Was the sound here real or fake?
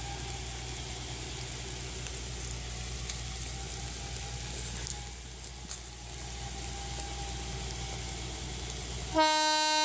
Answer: real